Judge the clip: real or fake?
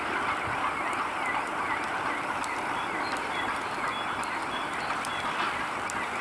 real